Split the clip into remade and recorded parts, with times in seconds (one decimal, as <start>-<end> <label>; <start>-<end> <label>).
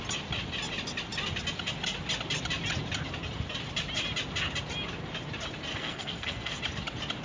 0.0-5.7 recorded; 5.7-6.6 remade; 6.6-7.2 recorded